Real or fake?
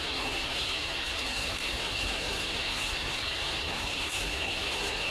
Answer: fake